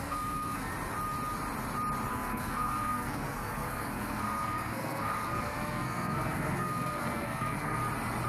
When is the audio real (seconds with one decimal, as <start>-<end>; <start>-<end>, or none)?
0.7-2.1; 7.8-8.3